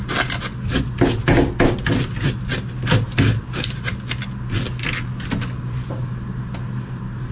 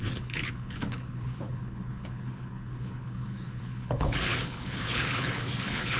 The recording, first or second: first